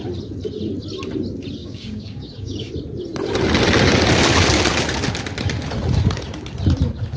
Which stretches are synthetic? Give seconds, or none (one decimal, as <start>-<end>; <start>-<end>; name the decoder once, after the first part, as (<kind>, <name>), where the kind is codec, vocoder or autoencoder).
1.6-2.7 (codec, DAC)